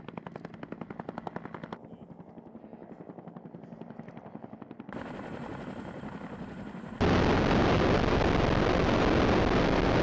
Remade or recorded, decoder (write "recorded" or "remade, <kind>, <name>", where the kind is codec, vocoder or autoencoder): recorded